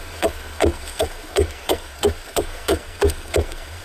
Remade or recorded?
remade